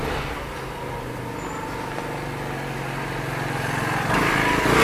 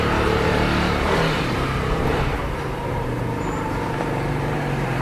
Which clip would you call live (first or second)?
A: first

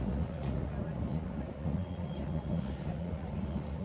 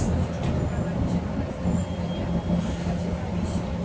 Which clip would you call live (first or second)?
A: second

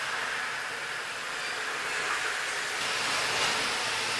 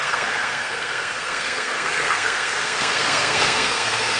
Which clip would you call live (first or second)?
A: first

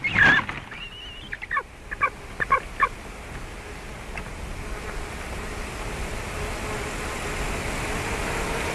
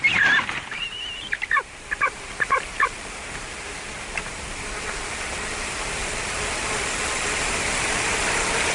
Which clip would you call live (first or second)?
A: first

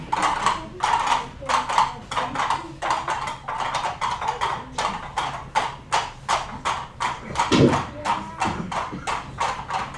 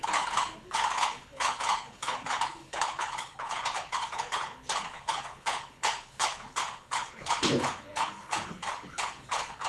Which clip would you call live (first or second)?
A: first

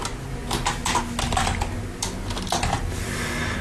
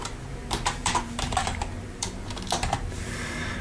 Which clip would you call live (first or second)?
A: first